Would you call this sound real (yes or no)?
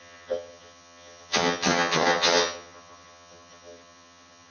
no